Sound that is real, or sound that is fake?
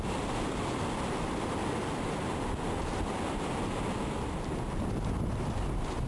real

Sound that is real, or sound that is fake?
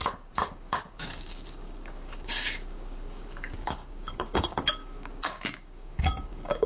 fake